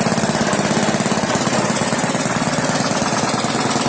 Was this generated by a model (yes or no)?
no